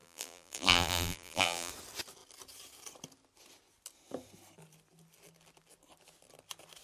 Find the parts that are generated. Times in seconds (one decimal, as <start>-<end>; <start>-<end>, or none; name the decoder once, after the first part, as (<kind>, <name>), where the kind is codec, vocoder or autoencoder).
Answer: 0.0-1.7 (vocoder, BigVGAN v2)